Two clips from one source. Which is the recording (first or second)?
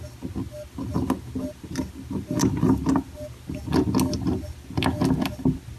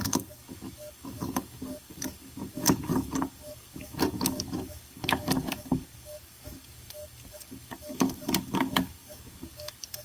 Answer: first